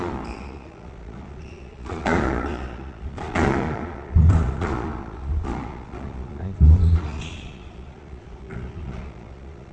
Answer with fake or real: fake